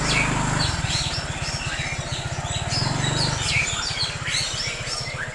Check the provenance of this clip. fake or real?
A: real